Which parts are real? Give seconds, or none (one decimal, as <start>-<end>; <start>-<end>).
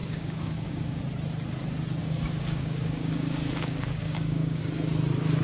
1.0-2.0; 4.6-5.4